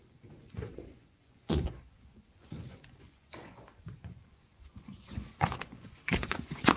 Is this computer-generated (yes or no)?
yes